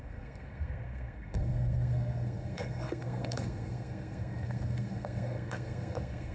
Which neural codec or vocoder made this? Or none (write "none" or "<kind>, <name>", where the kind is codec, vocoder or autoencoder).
codec, SNAC